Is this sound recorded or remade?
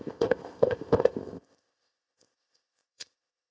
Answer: remade